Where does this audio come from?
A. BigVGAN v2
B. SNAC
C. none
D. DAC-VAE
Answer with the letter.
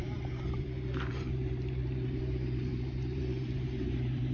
A